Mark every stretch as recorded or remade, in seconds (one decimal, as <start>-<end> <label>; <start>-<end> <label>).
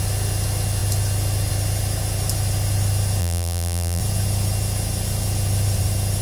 0.0-3.2 recorded; 3.2-4.0 remade; 4.0-6.2 recorded